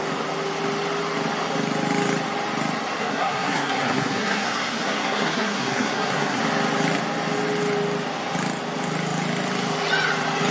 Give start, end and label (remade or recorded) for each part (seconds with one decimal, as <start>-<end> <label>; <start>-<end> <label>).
0.0-3.0 recorded; 3.0-6.4 remade; 6.4-10.5 recorded

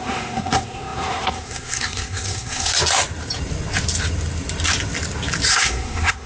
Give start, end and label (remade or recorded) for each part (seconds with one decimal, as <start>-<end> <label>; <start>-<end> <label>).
0.0-2.7 remade; 2.7-5.5 recorded; 5.5-6.3 remade

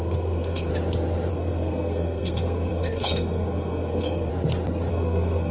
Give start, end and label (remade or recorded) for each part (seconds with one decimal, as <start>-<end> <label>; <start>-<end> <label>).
0.0-0.7 remade; 0.7-1.3 recorded; 1.3-4.3 remade; 4.3-4.9 recorded; 4.9-5.5 remade